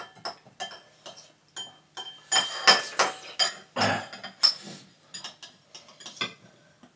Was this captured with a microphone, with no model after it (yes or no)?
yes